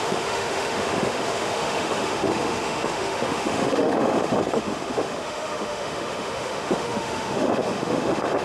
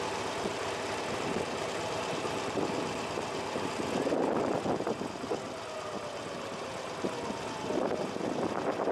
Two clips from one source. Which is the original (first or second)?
second